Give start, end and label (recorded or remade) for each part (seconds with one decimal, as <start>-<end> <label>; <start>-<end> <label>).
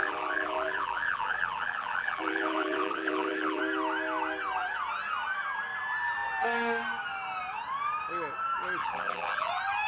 0.0-3.6 remade; 3.6-8.8 recorded; 8.8-9.5 remade; 9.5-9.9 recorded